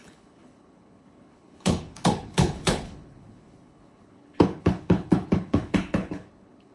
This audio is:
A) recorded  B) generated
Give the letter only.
B